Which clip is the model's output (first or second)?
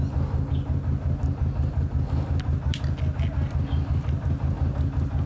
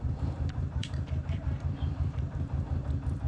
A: second